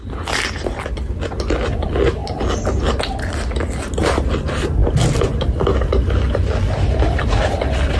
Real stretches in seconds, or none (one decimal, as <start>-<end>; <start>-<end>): 0.0-8.0